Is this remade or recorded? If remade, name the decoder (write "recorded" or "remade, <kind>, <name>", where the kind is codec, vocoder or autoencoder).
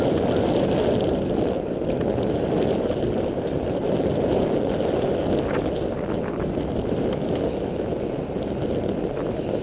recorded